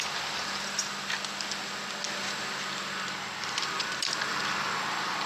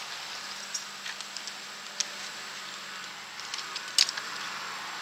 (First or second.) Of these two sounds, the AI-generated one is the first